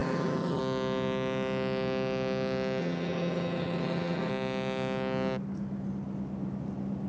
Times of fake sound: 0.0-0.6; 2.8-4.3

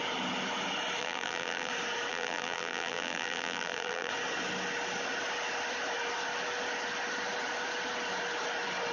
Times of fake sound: 1.0-1.7; 2.1-4.1

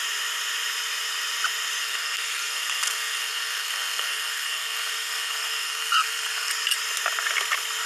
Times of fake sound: 1.8-6.5

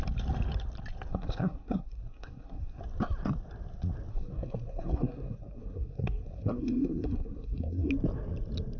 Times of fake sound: 1.1-2.8; 4.1-7.9

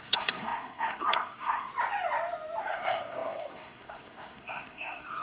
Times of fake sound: 0.0-1.7; 2.6-5.2